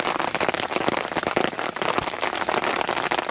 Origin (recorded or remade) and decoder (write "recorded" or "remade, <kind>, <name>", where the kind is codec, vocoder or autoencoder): recorded